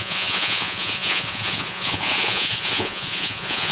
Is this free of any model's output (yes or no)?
no